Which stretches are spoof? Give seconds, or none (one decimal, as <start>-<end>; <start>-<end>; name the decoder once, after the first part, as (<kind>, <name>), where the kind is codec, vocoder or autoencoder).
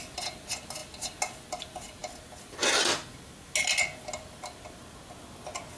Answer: none